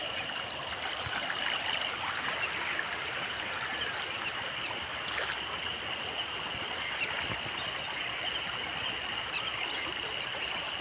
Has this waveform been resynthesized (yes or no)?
no